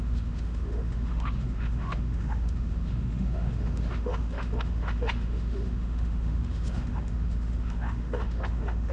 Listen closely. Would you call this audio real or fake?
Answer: fake